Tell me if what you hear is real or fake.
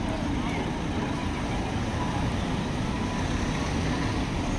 real